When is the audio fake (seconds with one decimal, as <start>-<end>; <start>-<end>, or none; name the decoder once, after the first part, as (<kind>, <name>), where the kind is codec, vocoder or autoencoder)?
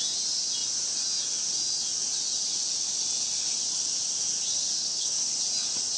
4.8-5.3 (codec, HILCodec)